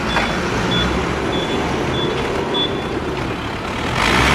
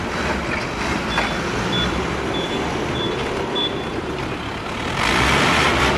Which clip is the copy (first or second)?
second